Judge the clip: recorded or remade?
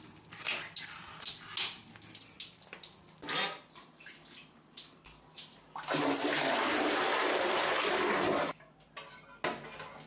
recorded